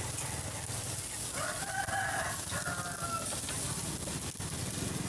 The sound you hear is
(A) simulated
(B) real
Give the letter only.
B